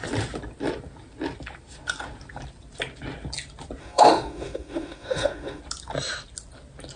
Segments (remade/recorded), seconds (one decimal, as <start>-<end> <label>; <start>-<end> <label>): 0.0-3.8 recorded; 3.8-5.6 remade; 5.6-7.0 recorded